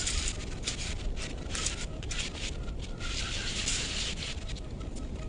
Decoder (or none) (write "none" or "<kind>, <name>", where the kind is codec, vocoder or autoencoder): none